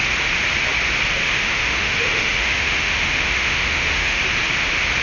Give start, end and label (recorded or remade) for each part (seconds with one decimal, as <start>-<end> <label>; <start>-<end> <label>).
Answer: 0.0-1.2 recorded; 1.2-4.2 remade; 4.2-5.0 recorded